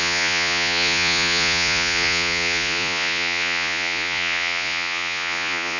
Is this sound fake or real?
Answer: fake